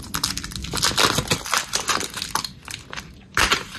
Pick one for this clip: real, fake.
real